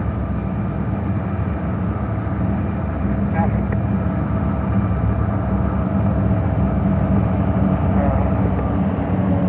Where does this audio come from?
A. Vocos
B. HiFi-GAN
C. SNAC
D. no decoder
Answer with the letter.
D